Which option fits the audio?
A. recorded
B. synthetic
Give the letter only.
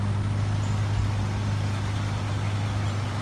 A